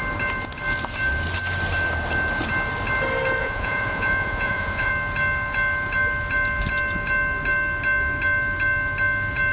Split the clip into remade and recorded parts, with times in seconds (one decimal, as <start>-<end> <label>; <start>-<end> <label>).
0.0-3.4 recorded; 3.4-4.9 remade; 4.9-9.5 recorded

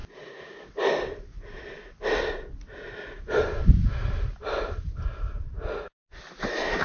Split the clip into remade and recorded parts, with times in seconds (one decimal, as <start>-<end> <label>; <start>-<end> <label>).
0.0-6.8 recorded

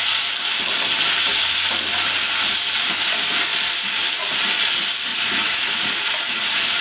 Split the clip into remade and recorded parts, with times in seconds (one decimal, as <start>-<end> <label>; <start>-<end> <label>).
0.0-5.1 recorded; 5.1-6.8 remade

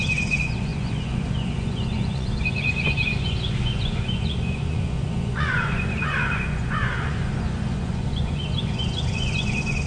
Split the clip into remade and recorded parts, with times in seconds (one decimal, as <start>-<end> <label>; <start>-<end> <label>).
0.0-9.9 remade